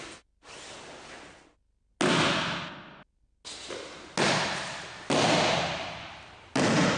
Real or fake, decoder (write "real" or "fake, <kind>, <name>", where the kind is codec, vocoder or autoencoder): real